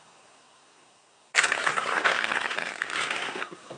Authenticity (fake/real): fake